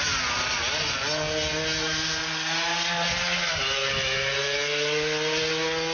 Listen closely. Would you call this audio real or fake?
real